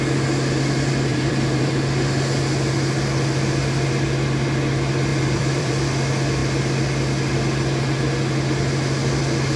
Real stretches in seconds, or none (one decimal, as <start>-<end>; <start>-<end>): 0.0-1.1; 1.7-5.1; 5.7-9.6